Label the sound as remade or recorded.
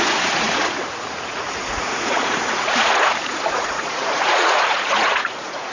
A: remade